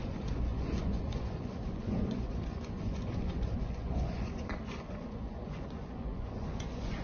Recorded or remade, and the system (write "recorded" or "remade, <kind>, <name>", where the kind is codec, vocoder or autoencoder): remade, vocoder, Vocos